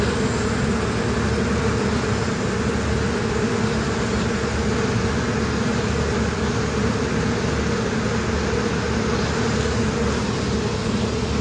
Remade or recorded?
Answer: recorded